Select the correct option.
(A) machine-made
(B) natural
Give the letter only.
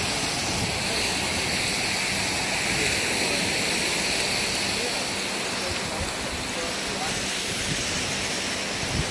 B